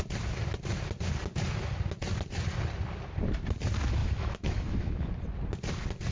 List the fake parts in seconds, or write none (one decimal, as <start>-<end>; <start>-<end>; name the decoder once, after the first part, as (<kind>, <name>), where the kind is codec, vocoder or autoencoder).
4.0-5.1 (autoencoder, DAC-VAE)

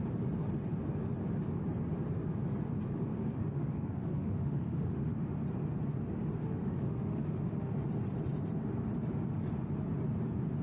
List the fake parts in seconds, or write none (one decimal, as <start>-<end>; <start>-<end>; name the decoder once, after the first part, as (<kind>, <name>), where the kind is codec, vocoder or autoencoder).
3.5-5.1 (autoencoder, DAC-VAE); 6.4-7.7

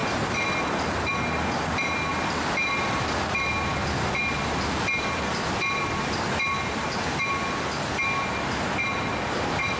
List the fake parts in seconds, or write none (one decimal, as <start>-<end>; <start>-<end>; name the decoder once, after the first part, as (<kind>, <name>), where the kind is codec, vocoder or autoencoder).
none

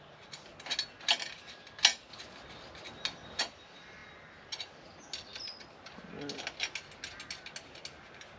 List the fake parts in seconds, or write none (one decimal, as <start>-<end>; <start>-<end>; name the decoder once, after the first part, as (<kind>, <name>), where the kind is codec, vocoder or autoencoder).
none

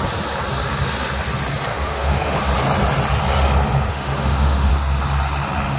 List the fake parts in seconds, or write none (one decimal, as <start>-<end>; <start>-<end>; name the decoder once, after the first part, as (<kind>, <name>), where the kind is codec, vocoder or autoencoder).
1.7-2.4 (autoencoder, DAC-VAE); 3.9-4.7

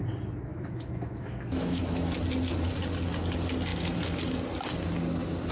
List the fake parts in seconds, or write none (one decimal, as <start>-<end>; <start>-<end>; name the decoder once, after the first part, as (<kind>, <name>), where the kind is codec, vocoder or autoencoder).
0.5-1.8 (autoencoder, DAC-VAE)